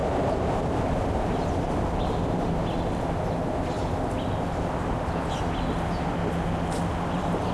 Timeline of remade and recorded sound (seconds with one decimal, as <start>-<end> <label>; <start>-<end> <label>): 0.0-2.6 remade; 2.6-7.1 recorded; 7.1-7.5 remade